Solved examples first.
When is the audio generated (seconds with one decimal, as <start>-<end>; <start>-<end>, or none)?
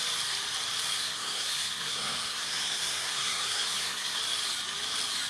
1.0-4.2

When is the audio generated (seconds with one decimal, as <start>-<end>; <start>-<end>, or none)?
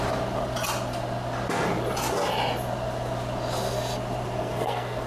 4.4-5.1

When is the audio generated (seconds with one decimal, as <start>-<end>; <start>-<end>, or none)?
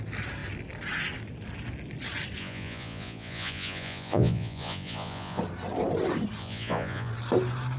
2.4-5.4; 6.4-7.1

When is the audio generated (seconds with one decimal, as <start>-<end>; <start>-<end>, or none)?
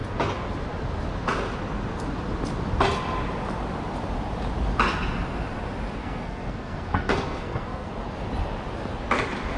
6.0-7.9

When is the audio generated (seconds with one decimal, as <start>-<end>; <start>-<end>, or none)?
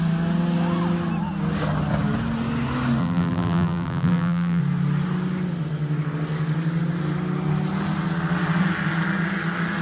3.0-4.6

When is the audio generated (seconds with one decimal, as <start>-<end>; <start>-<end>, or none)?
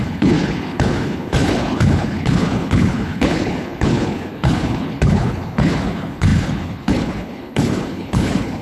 0.0-8.6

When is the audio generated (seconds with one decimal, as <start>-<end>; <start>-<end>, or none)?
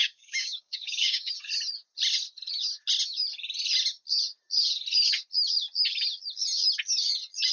0.0-1.5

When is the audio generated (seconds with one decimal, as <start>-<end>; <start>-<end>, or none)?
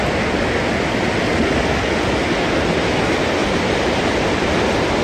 3.4-4.6